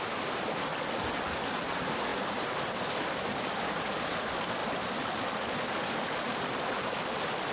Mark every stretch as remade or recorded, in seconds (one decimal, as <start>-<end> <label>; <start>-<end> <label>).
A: 0.0-4.6 recorded; 4.6-6.4 remade; 6.4-7.5 recorded